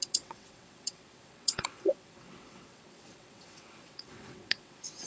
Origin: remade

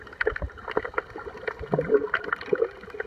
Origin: recorded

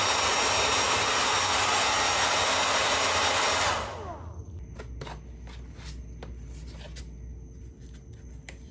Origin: recorded